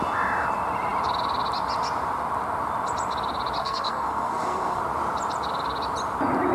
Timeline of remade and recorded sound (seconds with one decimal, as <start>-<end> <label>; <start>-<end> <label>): 0.0-3.6 recorded; 3.6-4.8 remade; 4.8-6.5 recorded